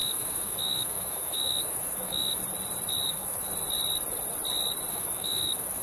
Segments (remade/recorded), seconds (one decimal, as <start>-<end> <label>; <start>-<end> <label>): 0.0-2.4 remade; 2.4-3.1 recorded; 3.1-3.5 remade; 3.5-4.9 recorded; 4.9-5.8 remade